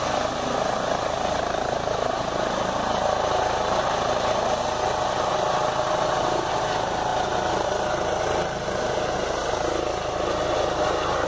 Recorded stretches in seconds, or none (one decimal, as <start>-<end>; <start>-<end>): 0.0-11.3